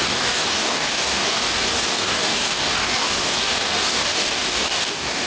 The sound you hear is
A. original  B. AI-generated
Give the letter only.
B